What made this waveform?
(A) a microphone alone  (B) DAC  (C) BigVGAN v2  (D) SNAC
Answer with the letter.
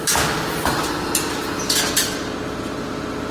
A